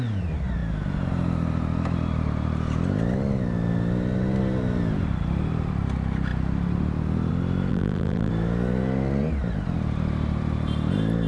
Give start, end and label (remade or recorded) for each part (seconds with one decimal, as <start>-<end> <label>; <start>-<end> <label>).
0.0-7.7 recorded; 7.7-8.3 remade; 8.3-11.3 recorded